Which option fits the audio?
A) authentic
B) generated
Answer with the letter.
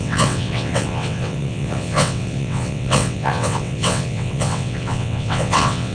B